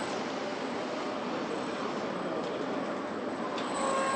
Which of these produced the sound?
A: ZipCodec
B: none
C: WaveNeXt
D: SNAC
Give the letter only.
B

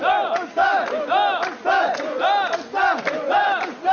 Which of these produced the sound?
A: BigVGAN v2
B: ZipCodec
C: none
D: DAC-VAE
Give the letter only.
C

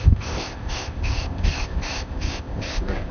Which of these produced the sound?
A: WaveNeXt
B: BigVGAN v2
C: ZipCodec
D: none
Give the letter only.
C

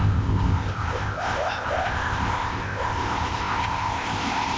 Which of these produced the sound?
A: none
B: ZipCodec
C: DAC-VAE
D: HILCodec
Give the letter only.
B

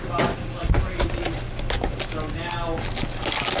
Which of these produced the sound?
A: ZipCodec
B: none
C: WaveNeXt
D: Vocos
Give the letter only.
B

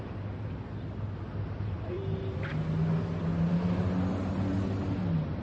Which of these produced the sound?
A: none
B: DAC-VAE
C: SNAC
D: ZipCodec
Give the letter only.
A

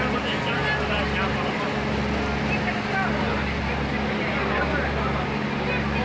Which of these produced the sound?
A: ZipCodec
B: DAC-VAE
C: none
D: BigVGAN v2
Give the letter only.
C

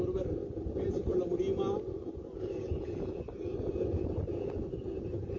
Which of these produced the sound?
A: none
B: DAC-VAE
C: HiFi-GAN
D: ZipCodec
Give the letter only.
A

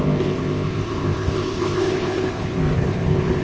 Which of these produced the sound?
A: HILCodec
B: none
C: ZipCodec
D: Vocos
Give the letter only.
C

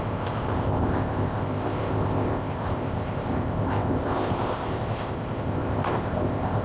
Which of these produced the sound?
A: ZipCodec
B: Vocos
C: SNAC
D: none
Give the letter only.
A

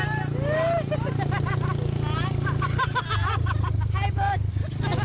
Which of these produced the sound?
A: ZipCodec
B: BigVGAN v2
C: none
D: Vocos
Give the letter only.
C